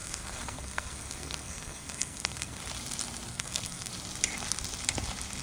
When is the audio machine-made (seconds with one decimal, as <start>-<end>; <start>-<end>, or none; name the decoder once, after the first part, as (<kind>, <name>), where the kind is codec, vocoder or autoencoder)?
0.0-2.6 (codec, SNAC); 3.3-3.9